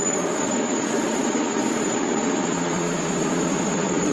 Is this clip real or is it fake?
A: fake